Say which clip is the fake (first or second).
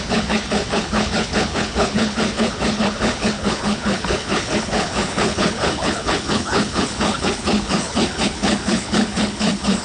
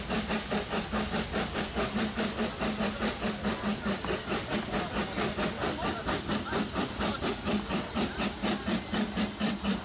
first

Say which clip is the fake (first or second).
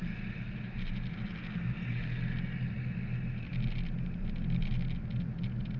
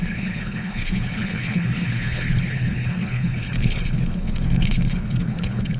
second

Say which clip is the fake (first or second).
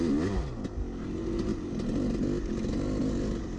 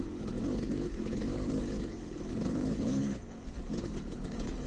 second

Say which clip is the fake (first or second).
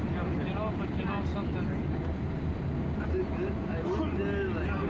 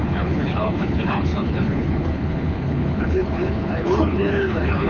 second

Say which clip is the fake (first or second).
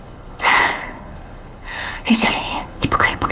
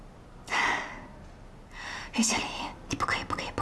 first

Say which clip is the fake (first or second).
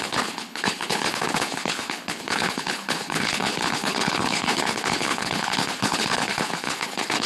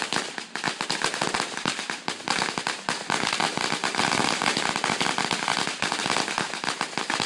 first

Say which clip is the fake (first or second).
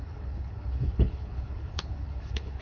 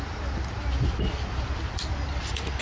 first